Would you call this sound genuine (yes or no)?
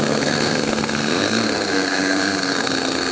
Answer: no